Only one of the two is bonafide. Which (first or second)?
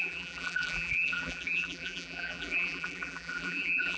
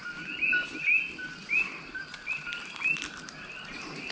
second